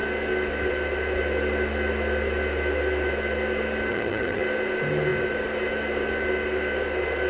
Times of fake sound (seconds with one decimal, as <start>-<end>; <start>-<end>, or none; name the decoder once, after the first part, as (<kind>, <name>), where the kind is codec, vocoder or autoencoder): 3.9-4.4 (vocoder, HiFi-GAN)